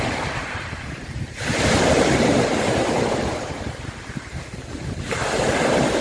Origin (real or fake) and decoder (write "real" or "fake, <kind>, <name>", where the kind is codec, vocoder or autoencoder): fake, vocoder, BigVGAN v2